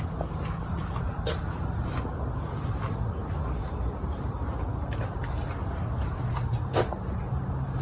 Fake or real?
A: real